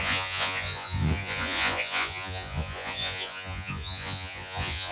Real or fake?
fake